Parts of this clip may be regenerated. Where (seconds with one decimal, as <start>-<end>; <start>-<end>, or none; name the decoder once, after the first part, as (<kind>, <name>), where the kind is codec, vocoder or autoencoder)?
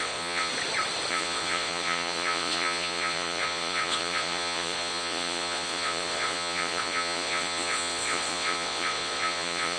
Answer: 0.0-0.5 (vocoder, Vocos); 1.1-9.8